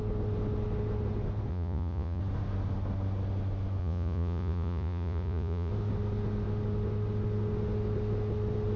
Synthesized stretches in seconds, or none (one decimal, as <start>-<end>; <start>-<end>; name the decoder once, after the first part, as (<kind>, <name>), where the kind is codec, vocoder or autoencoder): 1.5-2.2 (vocoder, Vocos); 3.8-5.7